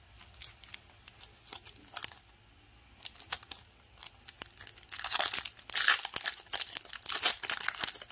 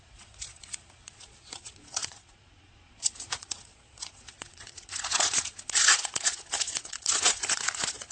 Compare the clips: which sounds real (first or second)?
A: first